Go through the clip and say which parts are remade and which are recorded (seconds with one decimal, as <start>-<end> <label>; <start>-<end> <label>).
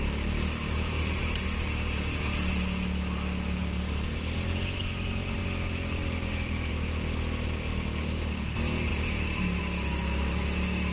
0.0-8.9 recorded; 8.9-9.6 remade; 9.6-10.9 recorded